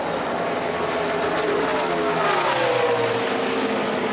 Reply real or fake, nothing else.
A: real